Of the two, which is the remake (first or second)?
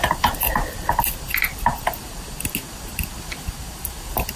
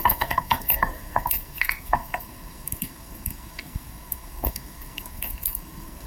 second